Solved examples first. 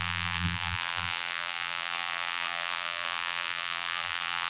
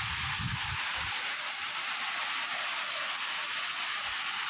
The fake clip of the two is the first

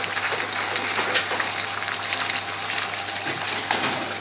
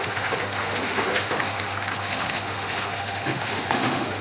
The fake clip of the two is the second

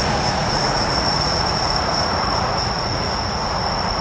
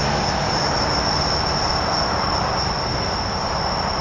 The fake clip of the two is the first